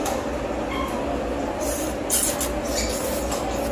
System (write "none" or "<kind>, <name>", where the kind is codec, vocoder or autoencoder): none